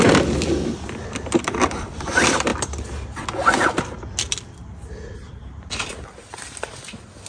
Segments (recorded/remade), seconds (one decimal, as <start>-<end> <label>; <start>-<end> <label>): 0.0-7.3 recorded

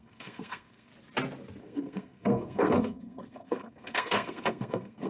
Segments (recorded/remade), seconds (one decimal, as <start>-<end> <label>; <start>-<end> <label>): 0.0-0.9 remade; 0.9-1.6 recorded; 1.6-5.1 remade

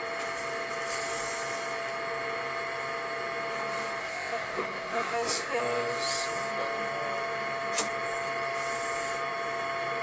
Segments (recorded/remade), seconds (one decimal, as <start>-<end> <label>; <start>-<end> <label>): 0.0-4.0 recorded; 4.0-5.6 remade; 5.6-10.0 recorded

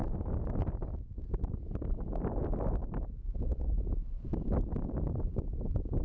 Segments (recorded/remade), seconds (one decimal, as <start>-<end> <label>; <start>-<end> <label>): 0.0-6.0 recorded

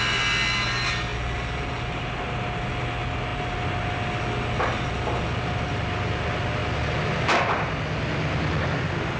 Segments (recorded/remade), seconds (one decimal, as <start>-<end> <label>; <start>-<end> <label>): 0.0-9.2 recorded